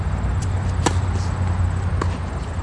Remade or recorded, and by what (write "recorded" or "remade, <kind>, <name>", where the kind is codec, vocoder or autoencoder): recorded